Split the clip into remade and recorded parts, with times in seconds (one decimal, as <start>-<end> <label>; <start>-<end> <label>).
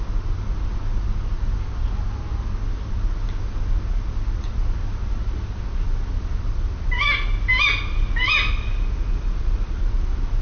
0.0-10.4 recorded